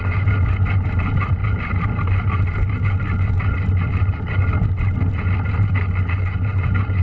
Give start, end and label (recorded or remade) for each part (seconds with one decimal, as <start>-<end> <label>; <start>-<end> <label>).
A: 0.0-7.0 recorded